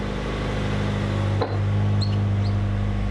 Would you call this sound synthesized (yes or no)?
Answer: no